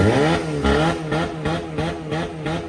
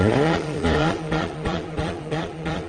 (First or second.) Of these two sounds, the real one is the first